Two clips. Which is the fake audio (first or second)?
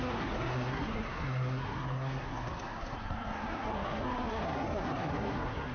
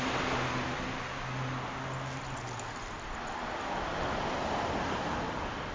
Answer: first